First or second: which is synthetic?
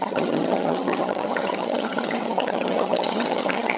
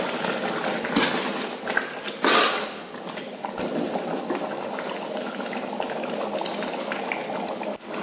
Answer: first